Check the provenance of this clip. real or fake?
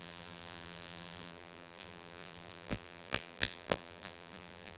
fake